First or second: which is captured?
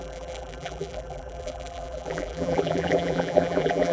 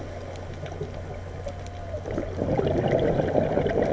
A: second